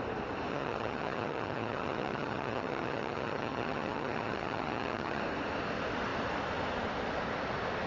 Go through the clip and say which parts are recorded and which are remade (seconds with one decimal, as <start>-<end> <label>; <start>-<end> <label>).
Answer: 0.0-0.5 recorded; 0.5-5.2 remade; 5.2-7.9 recorded